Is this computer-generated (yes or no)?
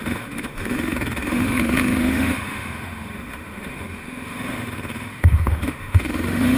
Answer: yes